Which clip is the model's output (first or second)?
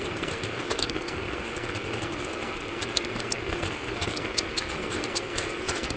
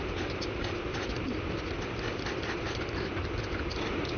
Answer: first